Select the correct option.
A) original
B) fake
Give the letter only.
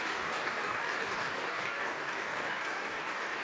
B